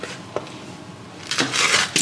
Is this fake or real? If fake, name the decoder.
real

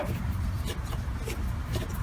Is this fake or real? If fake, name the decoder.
real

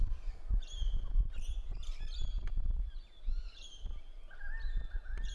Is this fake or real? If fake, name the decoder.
real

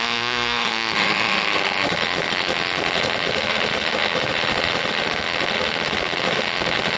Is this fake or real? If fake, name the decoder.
fake, autoencoder, DAC-VAE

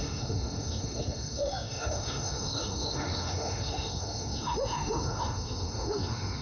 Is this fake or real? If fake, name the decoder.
fake, autoencoder, DAC-VAE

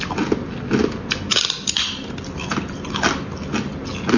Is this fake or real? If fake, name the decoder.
real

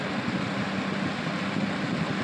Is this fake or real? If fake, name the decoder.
real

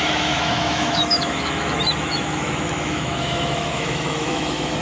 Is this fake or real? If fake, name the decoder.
fake, autoencoder, DAC-VAE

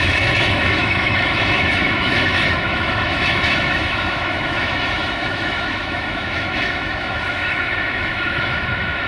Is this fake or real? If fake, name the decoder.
fake, autoencoder, DAC-VAE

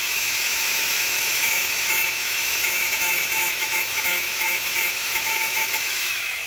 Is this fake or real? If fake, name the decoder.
fake, autoencoder, DAC-VAE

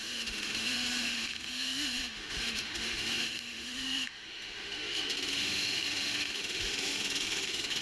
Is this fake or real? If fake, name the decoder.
fake, autoencoder, DAC-VAE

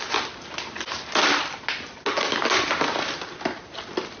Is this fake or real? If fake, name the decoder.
real